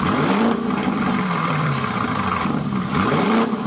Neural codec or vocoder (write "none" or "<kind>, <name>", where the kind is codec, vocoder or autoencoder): vocoder, BigVGAN v2